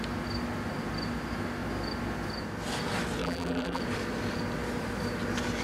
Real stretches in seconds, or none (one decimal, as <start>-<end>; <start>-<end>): 0.0-3.2; 3.8-5.6